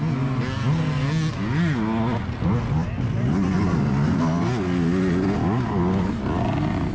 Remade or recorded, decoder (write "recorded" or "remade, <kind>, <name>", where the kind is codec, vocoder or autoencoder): recorded